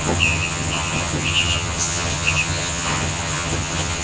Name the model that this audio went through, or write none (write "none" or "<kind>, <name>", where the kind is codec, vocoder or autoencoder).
vocoder, HiFi-GAN